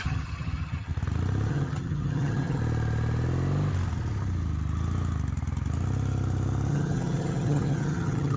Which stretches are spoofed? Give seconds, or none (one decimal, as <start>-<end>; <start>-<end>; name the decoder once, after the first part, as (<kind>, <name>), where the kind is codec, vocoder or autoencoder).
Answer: 0.0-0.9 (vocoder, HiFi-GAN); 1.5-2.6; 6.7-8.4